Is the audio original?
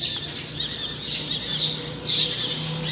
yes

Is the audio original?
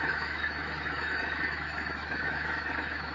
no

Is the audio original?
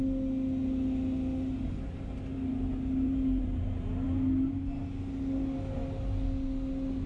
yes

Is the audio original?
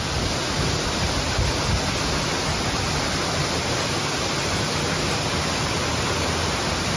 yes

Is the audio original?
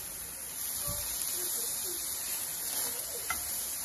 yes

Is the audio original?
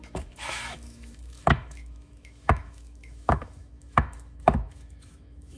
no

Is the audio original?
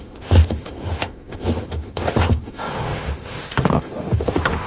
no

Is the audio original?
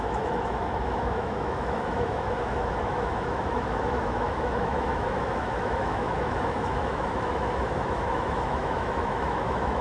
no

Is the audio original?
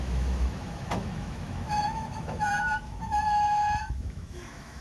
no